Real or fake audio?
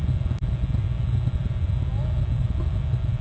real